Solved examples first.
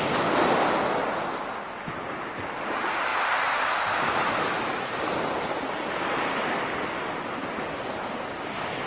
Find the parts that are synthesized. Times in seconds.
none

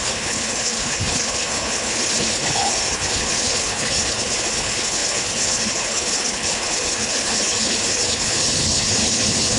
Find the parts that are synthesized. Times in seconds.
0.0-9.6

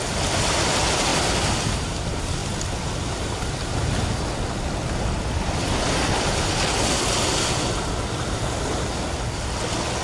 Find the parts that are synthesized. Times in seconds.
none

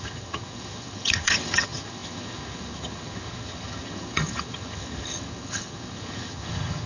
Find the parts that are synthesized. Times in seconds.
0.0-6.9

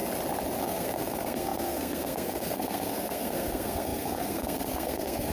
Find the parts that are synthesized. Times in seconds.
0.6-5.3

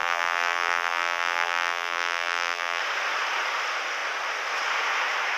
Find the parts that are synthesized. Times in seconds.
0.0-2.8

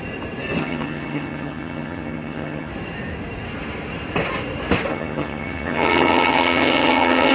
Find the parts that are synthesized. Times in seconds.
0.6-2.7; 4.9-7.3